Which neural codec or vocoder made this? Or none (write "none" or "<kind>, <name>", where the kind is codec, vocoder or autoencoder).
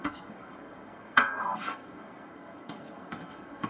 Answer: codec, SNAC